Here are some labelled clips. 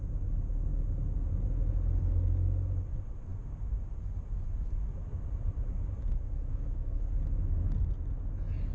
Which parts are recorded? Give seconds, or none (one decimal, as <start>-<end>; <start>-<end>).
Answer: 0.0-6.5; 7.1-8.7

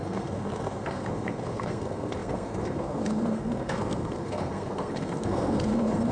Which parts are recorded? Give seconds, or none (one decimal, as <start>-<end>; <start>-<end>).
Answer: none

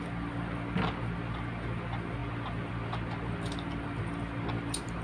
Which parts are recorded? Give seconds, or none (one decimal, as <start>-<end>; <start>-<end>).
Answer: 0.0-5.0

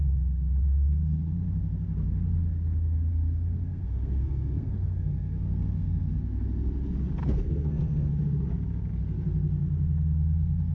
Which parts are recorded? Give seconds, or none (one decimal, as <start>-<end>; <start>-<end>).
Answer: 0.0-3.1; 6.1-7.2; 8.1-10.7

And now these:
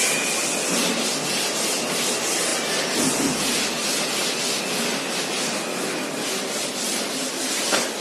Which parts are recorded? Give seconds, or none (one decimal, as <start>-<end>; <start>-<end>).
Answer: 0.0-8.0

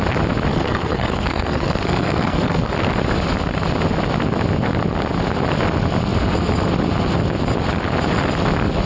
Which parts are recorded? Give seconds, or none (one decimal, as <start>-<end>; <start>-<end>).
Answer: 0.0-0.5; 2.7-8.9